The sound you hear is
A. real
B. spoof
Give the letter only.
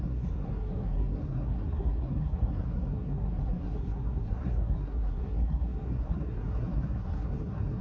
B